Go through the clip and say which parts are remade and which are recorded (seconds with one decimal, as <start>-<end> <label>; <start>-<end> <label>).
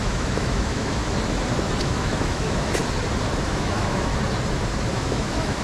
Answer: 0.0-1.0 remade; 1.0-1.8 recorded; 1.8-2.8 remade; 2.8-3.4 recorded; 3.4-4.1 remade; 4.1-4.9 recorded; 4.9-5.6 remade